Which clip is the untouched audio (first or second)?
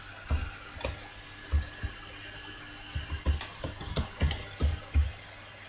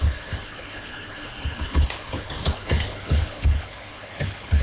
first